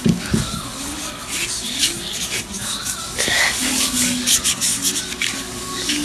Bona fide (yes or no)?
no